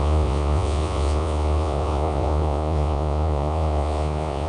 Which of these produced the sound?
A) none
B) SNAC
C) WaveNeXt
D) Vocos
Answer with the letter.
D